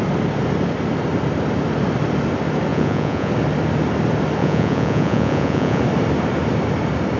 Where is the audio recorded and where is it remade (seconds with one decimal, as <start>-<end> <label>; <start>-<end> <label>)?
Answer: 0.0-2.7 recorded; 2.7-3.3 remade; 3.3-4.4 recorded; 4.4-5.8 remade; 5.8-7.2 recorded